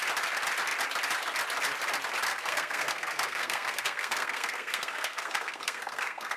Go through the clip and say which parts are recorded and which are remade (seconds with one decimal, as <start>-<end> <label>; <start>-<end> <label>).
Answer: 0.0-2.3 recorded; 2.3-6.4 remade